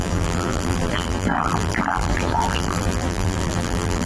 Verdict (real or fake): fake